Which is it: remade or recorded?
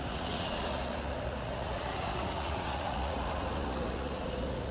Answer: remade